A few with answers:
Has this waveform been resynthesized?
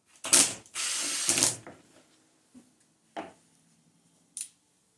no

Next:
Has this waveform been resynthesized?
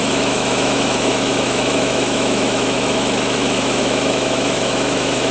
yes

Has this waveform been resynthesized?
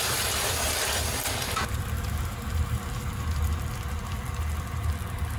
yes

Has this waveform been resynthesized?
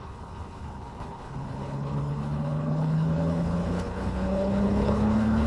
yes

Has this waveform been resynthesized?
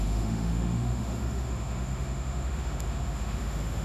yes